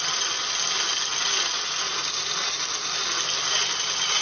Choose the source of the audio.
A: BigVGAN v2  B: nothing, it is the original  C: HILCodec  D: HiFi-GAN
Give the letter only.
B